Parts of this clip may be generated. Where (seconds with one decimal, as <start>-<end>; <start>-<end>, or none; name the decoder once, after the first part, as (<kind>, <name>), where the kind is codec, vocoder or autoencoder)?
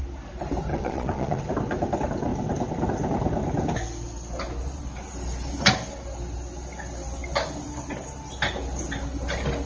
0.7-1.4 (vocoder, Vocos)